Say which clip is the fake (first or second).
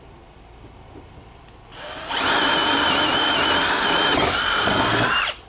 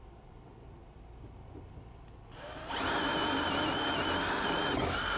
first